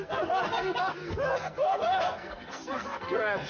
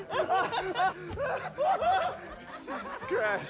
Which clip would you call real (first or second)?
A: second